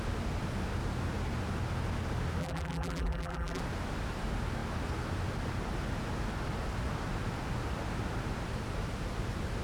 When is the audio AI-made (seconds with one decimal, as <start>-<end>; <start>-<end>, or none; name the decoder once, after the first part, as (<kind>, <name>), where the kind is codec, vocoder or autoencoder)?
2.4-3.6 (vocoder, BigVGAN v2)